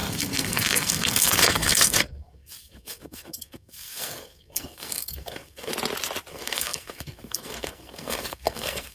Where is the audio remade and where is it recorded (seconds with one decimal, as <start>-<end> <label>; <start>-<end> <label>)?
0.0-5.7 remade; 5.7-6.3 recorded; 6.3-8.9 remade